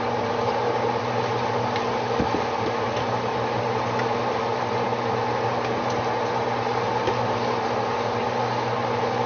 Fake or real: real